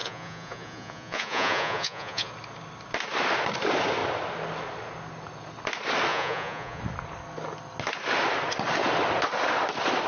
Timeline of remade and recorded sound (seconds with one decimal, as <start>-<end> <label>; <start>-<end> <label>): 0.0-2.3 remade; 2.3-6.1 recorded; 6.1-6.8 remade; 6.8-10.1 recorded